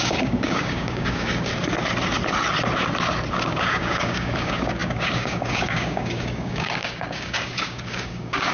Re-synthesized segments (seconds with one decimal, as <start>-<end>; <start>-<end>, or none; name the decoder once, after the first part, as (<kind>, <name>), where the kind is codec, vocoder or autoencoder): 0.0-1.5 (codec, DAC); 3.3-8.5